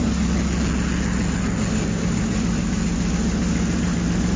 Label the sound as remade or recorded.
recorded